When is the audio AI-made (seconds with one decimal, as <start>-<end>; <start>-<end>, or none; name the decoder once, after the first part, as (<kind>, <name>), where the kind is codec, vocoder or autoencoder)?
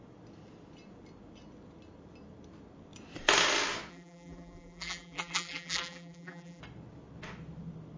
3.9-6.6 (vocoder, BigVGAN v2)